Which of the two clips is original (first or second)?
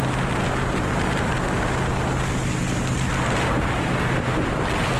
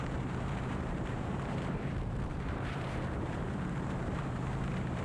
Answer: first